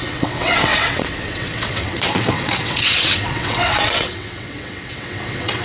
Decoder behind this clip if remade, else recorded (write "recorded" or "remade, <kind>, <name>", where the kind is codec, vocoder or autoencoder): remade, vocoder, WaveNeXt